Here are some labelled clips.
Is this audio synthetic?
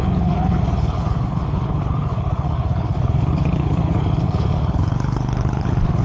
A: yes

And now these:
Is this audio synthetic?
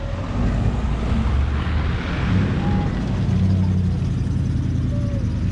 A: no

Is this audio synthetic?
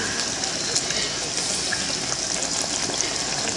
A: no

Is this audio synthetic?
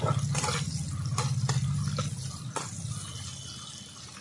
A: no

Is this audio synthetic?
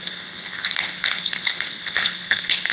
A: yes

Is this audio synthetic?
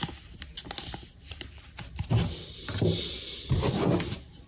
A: no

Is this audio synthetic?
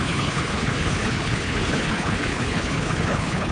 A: yes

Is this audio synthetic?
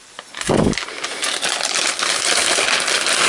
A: no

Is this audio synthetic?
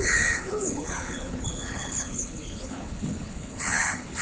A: yes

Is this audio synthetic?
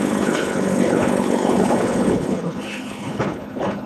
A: yes